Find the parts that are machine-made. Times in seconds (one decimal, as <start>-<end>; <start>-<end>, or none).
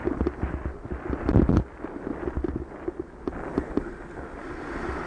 none